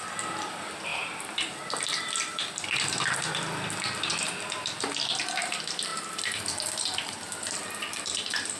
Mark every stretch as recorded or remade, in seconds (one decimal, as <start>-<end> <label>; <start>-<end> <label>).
0.0-5.9 remade; 5.9-6.4 recorded; 6.4-8.6 remade